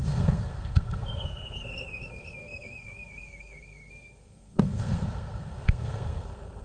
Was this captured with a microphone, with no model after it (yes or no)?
no